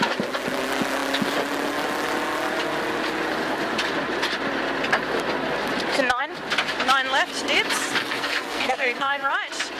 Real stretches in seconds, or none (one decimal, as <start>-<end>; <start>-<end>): 0.0-8.0; 9.3-9.8